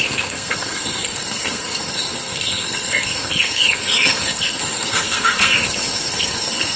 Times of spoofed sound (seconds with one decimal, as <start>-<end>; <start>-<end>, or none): 0.0-6.8